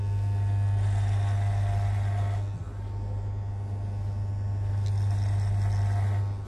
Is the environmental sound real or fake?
real